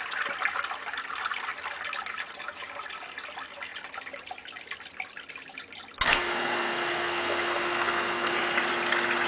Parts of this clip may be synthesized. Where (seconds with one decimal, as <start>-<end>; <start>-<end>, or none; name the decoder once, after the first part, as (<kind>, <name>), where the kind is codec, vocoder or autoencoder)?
6.1-8.6 (codec, SNAC)